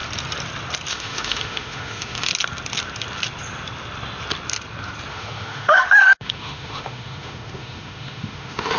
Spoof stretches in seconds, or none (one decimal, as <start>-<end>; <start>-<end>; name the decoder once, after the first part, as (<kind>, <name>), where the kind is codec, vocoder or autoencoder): 0.9-2.3 (autoencoder, DAC-VAE); 5.1-8.8